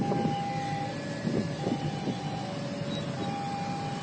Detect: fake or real real